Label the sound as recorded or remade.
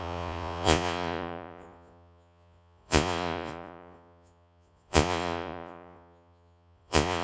remade